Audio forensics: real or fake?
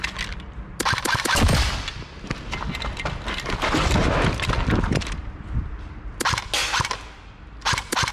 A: real